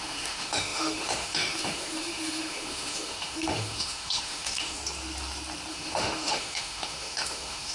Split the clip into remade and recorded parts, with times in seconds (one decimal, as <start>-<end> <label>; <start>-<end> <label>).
0.0-4.8 remade; 4.8-5.7 recorded; 5.7-7.7 remade

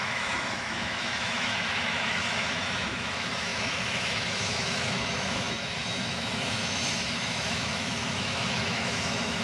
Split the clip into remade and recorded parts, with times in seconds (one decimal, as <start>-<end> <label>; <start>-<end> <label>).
0.0-9.4 remade

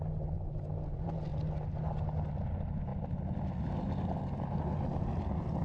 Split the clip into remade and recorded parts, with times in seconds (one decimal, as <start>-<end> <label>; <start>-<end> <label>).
0.0-5.6 recorded

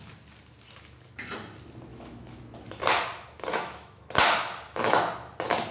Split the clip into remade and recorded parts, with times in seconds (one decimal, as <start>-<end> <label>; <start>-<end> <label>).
0.0-1.9 recorded; 1.9-2.4 remade; 2.4-3.5 recorded; 3.5-4.1 remade; 4.1-5.7 recorded

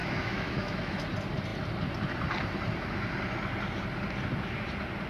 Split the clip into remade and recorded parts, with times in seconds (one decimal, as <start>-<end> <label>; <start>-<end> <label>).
0.0-1.0 remade; 1.0-5.1 recorded

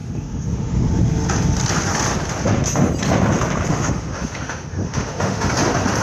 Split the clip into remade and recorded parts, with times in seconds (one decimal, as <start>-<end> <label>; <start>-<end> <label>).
0.0-0.9 remade; 0.9-3.7 recorded; 3.7-5.5 remade; 5.5-6.0 recorded